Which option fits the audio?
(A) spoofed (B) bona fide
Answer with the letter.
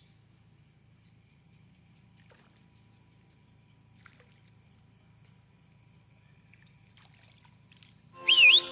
B